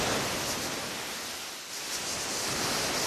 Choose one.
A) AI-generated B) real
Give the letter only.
B